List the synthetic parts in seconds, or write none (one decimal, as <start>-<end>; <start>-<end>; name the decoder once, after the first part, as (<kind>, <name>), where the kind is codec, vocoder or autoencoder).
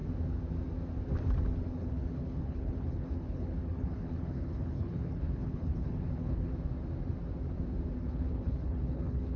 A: 1.7-6.5 (codec, HILCodec); 8.0-9.4